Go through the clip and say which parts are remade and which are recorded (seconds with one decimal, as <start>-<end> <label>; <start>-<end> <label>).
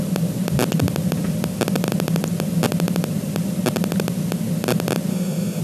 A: 0.0-5.1 recorded; 5.1-5.6 remade